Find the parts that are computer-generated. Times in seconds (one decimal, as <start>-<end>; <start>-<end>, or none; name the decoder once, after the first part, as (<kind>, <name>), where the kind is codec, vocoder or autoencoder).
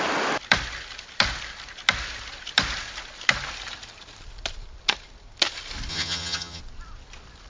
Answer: 5.9-6.6 (vocoder, HiFi-GAN)